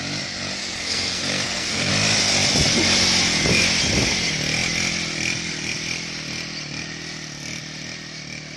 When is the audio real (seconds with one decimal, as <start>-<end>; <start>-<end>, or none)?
0.0-0.6; 1.9-8.6